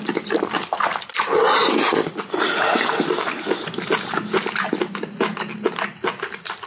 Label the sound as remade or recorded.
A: recorded